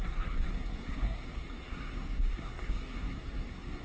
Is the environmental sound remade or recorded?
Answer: remade